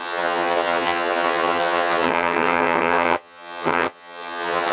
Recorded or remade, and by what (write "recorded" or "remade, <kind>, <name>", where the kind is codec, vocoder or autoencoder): remade, vocoder, HiFi-GAN